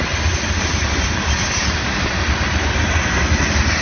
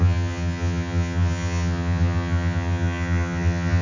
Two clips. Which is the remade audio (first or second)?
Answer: second